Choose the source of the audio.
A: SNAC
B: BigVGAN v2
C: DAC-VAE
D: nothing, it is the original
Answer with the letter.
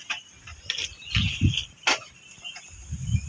D